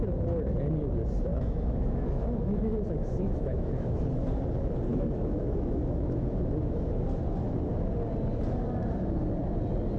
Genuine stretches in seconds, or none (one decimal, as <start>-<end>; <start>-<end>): 0.0-1.3; 4.0-4.9; 7.0-10.0